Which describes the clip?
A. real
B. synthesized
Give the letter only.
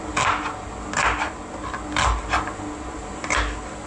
A